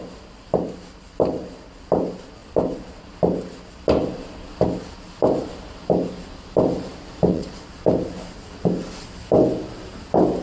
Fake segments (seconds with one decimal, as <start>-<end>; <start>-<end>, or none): 7.3-7.8